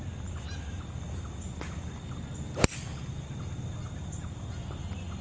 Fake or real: real